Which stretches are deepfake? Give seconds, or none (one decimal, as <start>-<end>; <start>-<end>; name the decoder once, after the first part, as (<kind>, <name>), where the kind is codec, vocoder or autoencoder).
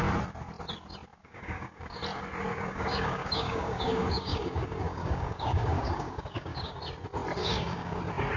1.2-2.0 (codec, DAC); 2.5-6.8; 7.4-8.0